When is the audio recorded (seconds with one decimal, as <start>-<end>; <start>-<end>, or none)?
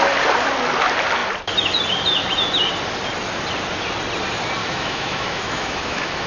0.0-4.6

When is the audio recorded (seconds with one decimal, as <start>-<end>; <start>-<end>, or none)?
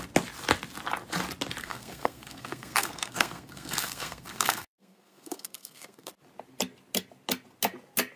0.0-1.6; 6.1-8.2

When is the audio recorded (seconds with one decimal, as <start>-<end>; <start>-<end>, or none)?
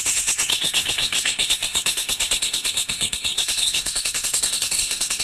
none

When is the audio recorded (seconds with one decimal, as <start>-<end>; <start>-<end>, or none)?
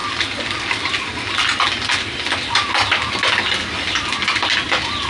0.0-5.1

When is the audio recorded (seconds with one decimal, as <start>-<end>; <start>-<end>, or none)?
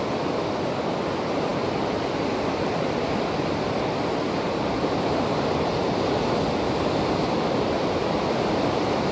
0.0-9.1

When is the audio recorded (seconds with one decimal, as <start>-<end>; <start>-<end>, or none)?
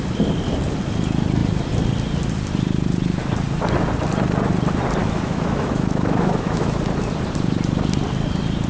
0.0-5.0; 6.8-8.7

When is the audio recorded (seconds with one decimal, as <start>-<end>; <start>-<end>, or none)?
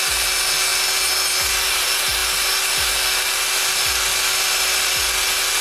0.0-5.6